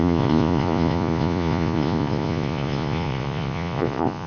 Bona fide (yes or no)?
no